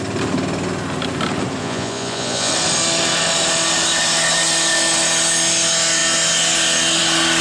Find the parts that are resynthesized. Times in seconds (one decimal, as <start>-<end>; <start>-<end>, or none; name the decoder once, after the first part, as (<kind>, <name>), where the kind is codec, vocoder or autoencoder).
1.6-2.5 (vocoder, Vocos)